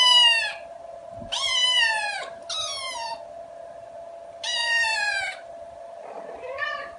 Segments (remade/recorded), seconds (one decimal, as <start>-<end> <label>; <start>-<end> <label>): 0.0-7.0 recorded